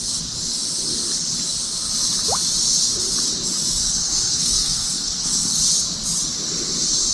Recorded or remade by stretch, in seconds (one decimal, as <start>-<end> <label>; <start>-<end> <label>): 0.0-3.8 recorded; 3.8-5.6 remade; 5.6-7.1 recorded